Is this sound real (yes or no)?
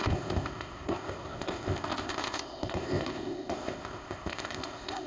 no